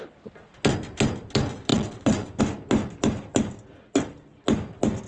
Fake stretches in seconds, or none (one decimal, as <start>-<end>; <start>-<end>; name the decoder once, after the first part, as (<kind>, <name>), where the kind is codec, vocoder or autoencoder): 1.7-2.4 (vocoder, WaveNeXt)